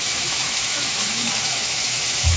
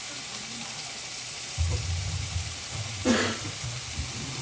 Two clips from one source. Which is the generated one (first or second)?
first